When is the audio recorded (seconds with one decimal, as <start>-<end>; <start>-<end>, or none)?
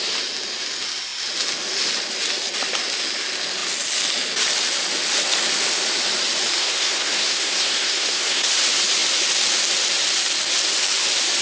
0.0-6.6; 8.5-11.4